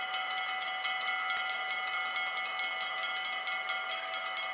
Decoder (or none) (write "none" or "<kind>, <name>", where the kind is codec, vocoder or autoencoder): none